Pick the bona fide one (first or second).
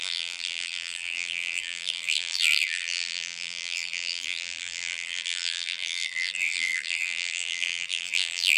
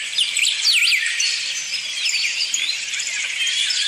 second